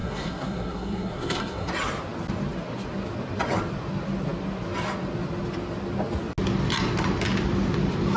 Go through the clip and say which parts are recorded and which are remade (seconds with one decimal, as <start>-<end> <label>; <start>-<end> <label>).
0.0-1.7 remade; 1.7-8.2 recorded

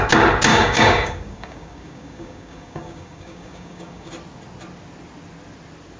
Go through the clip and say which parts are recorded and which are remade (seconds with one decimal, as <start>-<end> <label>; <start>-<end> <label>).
0.0-0.5 recorded; 0.5-4.1 remade; 4.1-6.0 recorded

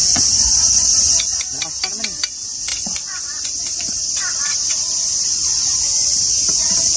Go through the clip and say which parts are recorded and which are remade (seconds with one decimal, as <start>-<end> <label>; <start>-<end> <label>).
0.0-0.9 remade; 0.9-2.7 recorded; 2.7-5.8 remade; 5.8-7.0 recorded

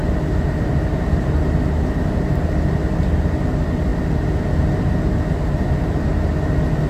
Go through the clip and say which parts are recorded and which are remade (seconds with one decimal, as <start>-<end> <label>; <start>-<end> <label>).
0.0-6.9 recorded

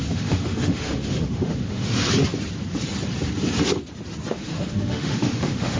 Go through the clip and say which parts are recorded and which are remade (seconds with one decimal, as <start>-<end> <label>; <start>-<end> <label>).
0.0-2.0 remade; 2.0-4.3 recorded; 4.3-5.8 remade